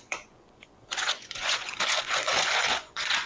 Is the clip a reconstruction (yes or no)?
yes